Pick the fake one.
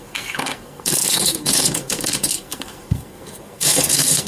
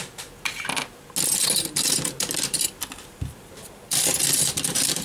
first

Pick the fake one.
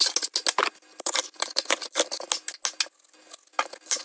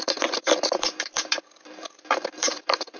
second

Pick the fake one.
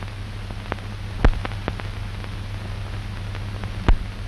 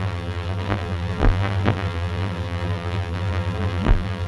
second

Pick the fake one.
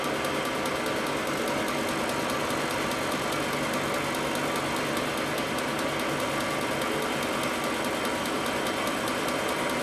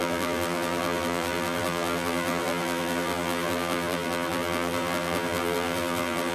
second